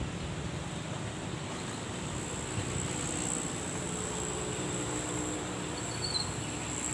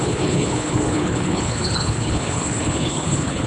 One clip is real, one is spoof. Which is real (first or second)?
first